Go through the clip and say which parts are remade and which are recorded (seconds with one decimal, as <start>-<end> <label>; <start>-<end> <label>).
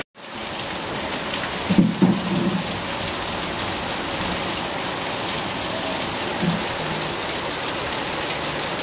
0.0-8.8 recorded